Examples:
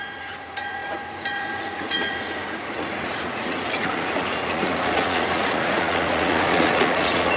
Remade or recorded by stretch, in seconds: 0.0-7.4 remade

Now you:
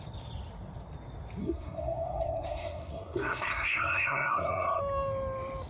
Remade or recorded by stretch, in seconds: 0.0-1.4 recorded; 1.4-4.8 remade; 4.8-5.7 recorded

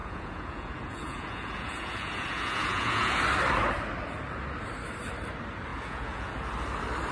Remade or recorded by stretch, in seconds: 0.0-3.2 remade; 3.2-5.7 recorded; 5.7-6.3 remade; 6.3-7.1 recorded

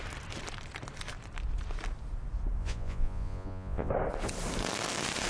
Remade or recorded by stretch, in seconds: 0.0-2.6 recorded; 2.6-3.9 remade; 3.9-5.3 recorded

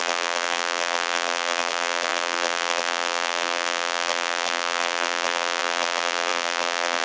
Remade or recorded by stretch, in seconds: 0.0-7.0 remade

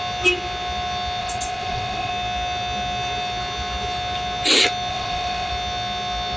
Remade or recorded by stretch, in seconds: 0.0-1.2 recorded; 1.2-2.1 remade; 2.1-4.9 recorded; 4.9-5.5 remade; 5.5-6.4 recorded

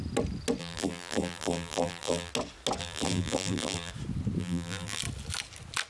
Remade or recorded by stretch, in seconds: 0.0-0.6 recorded; 0.6-2.3 remade; 2.3-2.8 recorded; 2.8-3.9 remade; 3.9-4.4 recorded; 4.4-5.0 remade; 5.0-5.9 recorded